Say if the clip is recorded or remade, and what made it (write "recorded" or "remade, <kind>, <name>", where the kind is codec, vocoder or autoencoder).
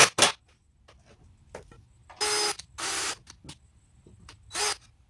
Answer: recorded